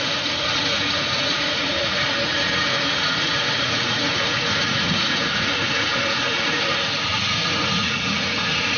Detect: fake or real fake